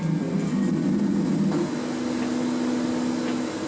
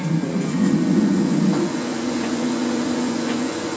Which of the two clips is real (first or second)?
first